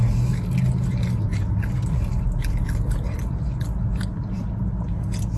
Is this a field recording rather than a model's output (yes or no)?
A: yes